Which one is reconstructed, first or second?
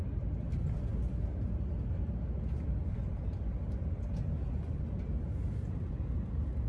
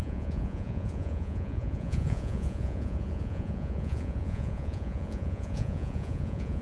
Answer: second